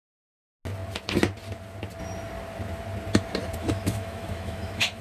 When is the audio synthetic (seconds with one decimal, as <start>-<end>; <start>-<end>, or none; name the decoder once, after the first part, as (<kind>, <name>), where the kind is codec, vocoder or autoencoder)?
3.6-5.0 (autoencoder, DAC-VAE)